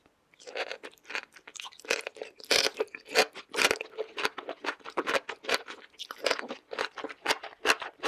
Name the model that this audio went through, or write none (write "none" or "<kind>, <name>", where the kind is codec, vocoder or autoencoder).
none